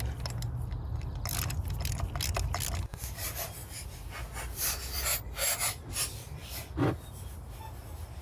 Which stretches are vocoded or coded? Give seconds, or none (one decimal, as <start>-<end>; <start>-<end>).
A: none